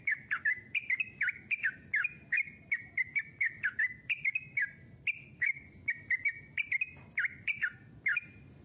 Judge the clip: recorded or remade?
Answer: recorded